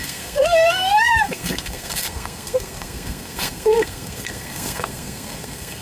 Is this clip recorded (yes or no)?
no